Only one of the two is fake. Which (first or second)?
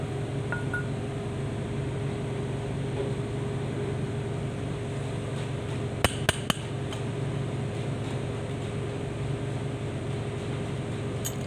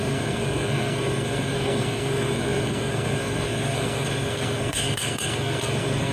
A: second